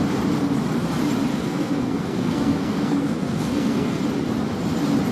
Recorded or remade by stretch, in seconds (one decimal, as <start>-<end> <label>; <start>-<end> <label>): 0.0-1.3 recorded; 1.3-4.0 remade; 4.0-5.1 recorded